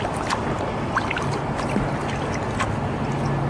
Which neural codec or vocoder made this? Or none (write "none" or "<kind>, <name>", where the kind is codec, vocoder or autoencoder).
none